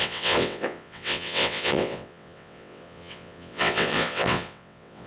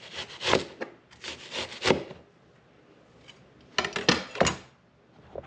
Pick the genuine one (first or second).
second